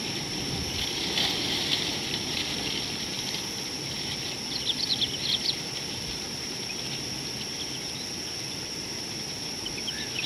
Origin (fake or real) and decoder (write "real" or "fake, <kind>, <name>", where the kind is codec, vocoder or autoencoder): fake, vocoder, BigVGAN v2